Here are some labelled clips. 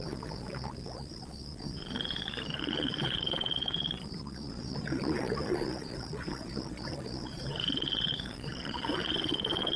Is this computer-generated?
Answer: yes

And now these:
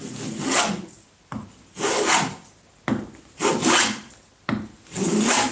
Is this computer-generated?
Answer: no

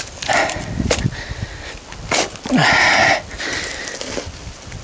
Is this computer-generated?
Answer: no